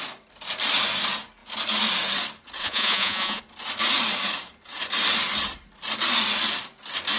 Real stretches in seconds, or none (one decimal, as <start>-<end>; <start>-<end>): 0.0-2.6; 3.4-7.2